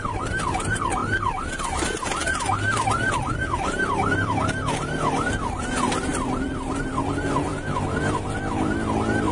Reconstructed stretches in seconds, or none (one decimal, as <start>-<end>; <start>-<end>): 0.0-1.0; 3.1-7.5; 8.5-9.3